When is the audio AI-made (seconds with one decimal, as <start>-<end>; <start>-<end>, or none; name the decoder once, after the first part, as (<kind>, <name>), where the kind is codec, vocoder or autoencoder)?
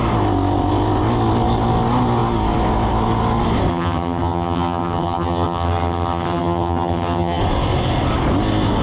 3.7-7.4 (vocoder, HiFi-GAN)